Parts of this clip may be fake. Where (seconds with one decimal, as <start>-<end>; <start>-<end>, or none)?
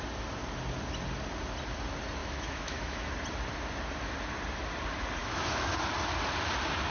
2.2-3.1; 5.2-5.8